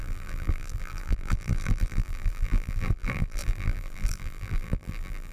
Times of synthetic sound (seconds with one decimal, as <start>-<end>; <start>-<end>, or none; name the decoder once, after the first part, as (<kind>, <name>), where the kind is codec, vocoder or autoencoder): 0.0-5.3 (vocoder, BigVGAN v2)